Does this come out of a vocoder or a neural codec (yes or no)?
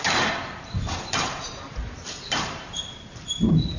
yes